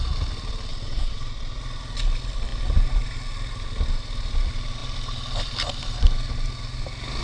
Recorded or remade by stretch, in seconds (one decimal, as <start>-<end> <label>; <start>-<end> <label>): 0.0-0.7 recorded; 0.7-1.6 remade; 1.6-7.2 recorded